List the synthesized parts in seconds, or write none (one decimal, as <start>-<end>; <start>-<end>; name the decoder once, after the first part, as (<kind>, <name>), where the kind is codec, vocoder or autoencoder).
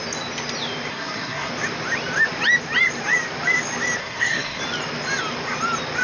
0.9-1.5 (codec, SNAC); 4.0-4.6